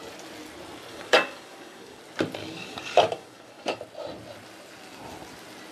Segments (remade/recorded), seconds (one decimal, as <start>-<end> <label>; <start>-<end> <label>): 0.0-0.9 recorded; 0.9-2.0 remade; 2.0-2.4 recorded; 2.4-3.8 remade; 3.8-5.7 recorded